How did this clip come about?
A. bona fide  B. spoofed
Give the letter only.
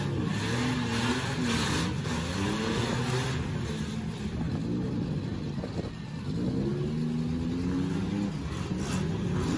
A